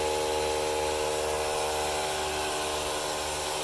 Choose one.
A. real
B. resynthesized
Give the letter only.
A